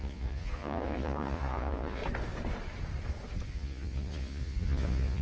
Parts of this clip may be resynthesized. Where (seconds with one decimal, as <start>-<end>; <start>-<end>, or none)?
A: 0.0-2.0; 3.5-5.2